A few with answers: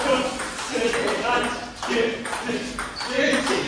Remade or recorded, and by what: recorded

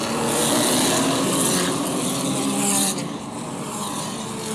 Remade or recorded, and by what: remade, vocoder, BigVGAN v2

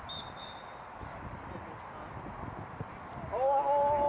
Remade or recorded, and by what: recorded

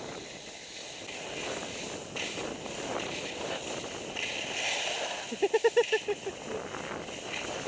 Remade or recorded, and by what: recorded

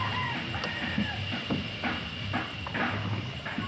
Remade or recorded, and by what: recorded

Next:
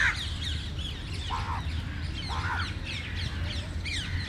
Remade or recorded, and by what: recorded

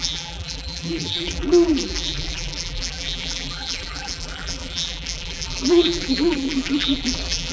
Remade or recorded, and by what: remade, vocoder, BigVGAN v2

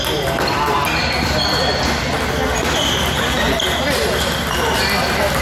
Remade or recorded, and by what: recorded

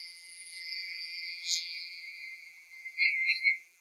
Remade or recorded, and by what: remade, vocoder, BigVGAN v2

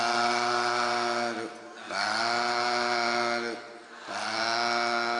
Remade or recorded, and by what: recorded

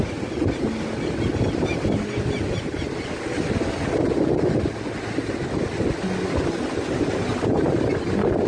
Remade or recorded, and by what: recorded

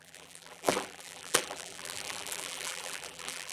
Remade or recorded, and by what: remade, vocoder, BigVGAN v2